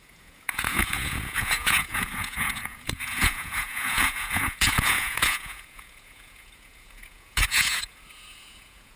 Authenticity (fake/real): fake